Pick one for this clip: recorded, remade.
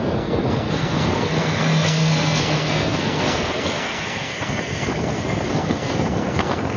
remade